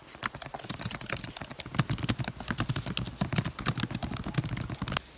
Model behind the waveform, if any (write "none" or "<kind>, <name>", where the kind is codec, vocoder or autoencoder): none